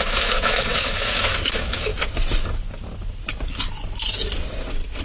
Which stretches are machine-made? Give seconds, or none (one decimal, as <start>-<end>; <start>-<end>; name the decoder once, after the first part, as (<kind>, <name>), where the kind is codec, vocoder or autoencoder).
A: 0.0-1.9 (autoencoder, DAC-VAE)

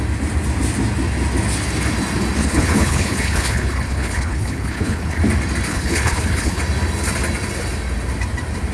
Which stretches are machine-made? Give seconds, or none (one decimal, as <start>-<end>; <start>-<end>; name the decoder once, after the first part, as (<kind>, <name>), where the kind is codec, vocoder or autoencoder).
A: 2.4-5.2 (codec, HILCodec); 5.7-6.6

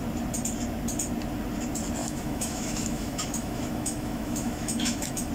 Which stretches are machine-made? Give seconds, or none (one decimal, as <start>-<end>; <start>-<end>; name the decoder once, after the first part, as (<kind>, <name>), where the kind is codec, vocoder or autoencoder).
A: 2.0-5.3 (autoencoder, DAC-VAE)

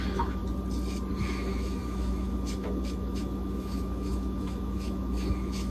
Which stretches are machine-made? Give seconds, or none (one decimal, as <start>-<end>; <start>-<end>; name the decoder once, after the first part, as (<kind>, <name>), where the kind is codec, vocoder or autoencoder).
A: 0.0-0.4 (autoencoder, DAC-VAE); 1.1-5.7